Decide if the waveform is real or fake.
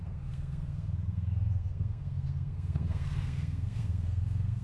fake